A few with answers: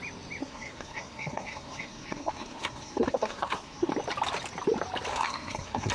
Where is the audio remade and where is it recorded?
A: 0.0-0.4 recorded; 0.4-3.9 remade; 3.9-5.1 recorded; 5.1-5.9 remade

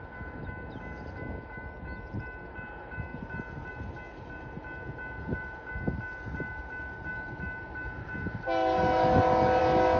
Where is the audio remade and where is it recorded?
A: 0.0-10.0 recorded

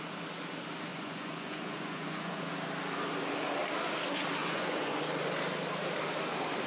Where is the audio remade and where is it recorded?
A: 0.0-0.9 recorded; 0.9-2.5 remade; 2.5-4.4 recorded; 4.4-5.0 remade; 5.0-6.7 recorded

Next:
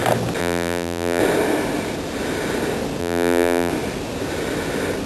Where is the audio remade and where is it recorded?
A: 0.0-0.4 recorded; 0.4-1.2 remade; 1.2-3.0 recorded; 3.0-3.7 remade; 3.7-5.1 recorded

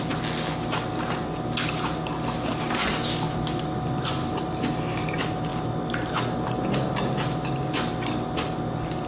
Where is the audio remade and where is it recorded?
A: 0.0-9.1 recorded

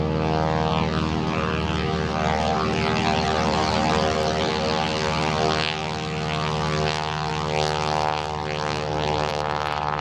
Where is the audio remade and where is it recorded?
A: 0.0-0.7 recorded; 0.7-4.5 remade; 4.5-10.0 recorded

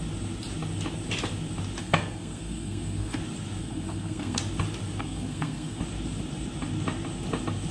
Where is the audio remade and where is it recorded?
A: 0.0-1.8 recorded; 1.8-3.2 remade; 3.2-3.6 recorded; 3.6-4.4 remade; 4.4-5.0 recorded; 5.0-5.8 remade; 5.8-7.7 recorded